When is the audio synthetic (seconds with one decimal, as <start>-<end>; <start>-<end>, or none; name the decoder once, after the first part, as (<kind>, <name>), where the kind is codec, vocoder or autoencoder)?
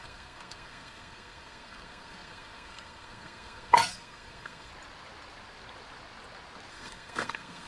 0.0-4.7 (codec, SNAC); 6.7-7.7